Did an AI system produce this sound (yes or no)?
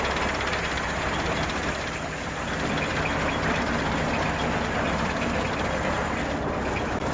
no